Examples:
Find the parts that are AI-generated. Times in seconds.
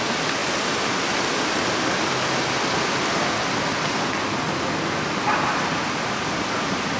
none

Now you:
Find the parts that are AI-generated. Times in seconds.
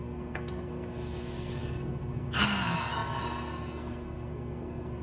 0.0-5.0 (codec, SNAC)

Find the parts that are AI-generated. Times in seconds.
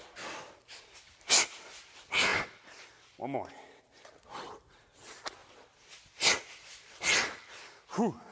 5.4-7.0 (vocoder, BigVGAN v2)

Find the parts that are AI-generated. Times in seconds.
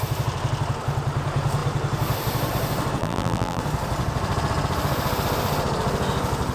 3.0-3.6 (vocoder, BigVGAN v2)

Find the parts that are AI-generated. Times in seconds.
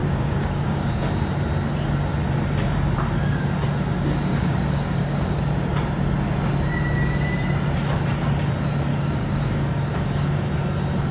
0.0-1.0 (codec, DAC); 4.3-5.4; 8.9-10.5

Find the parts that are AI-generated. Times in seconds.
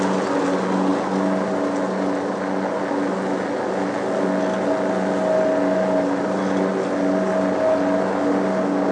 none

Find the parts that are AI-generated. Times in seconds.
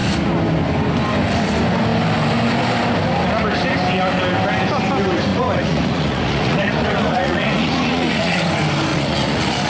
5.3-8.4 (vocoder, Vocos); 8.9-9.7